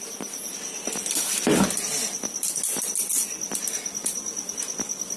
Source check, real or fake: real